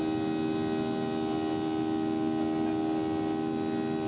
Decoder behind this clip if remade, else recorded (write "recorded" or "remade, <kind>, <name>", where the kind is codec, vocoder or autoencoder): recorded